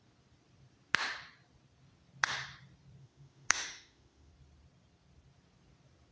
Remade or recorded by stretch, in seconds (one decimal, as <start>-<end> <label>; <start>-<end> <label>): 0.0-3.0 recorded; 3.0-4.3 remade; 4.3-6.1 recorded